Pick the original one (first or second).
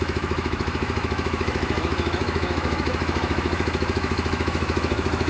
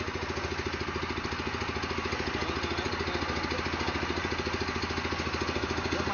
second